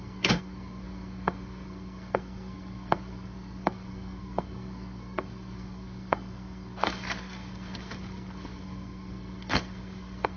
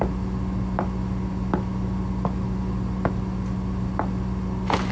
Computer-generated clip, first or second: first